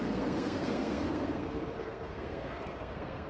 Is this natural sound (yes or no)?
no